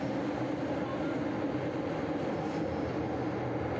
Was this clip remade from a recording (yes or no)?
no